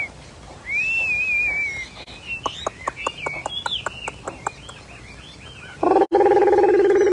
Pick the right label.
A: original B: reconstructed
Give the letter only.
A